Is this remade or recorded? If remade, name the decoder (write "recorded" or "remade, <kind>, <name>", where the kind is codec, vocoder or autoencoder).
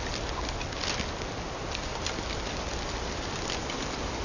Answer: recorded